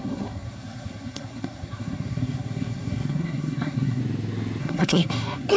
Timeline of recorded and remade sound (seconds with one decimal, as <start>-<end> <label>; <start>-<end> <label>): 0.0-4.0 remade; 4.0-4.6 recorded; 4.6-5.6 remade